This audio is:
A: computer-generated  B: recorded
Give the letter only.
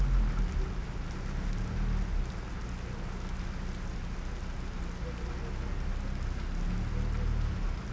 B